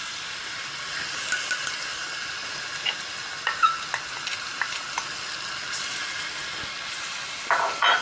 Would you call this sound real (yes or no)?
yes